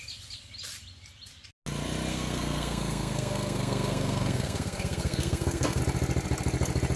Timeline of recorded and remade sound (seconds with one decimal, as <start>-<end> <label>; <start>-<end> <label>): 0.0-2.1 recorded; 2.1-5.8 remade; 5.8-7.0 recorded